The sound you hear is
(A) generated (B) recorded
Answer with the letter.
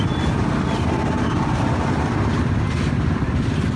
B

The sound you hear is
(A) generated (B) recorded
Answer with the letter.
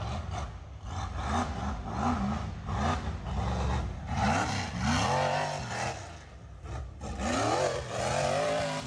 B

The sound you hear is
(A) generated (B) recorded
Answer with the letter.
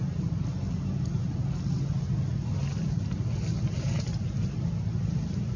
B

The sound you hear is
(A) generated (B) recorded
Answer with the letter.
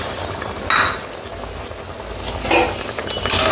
B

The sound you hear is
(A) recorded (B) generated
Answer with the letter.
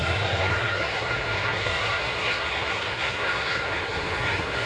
B